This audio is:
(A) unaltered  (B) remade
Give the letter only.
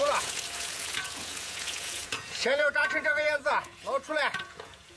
B